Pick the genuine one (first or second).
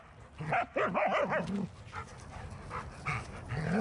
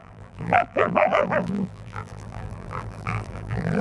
first